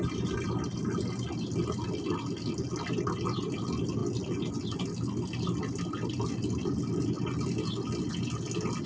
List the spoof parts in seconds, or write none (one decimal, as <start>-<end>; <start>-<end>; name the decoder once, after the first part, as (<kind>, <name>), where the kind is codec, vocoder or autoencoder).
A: none